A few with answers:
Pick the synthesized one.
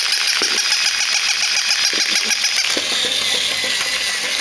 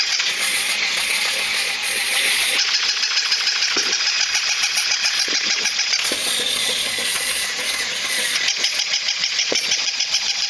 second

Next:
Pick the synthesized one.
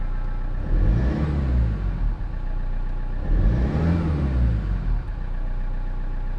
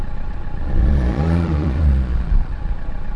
second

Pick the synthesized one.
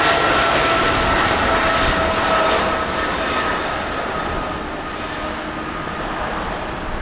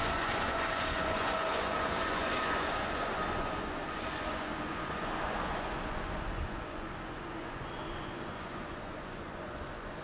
second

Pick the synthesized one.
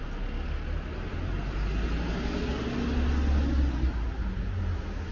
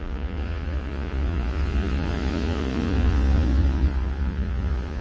second